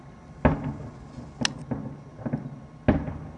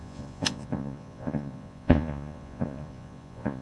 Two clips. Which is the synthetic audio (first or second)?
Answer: second